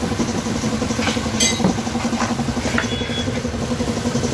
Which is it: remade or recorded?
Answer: recorded